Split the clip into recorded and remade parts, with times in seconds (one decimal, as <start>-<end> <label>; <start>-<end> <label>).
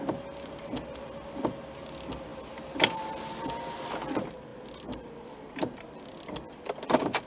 0.0-7.3 recorded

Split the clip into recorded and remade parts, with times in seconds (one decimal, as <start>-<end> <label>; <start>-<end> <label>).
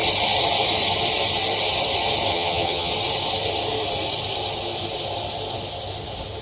0.0-2.3 recorded; 2.3-2.9 remade; 2.9-6.4 recorded